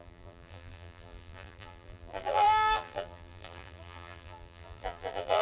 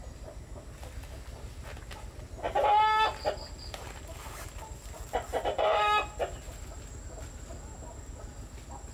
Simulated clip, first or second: first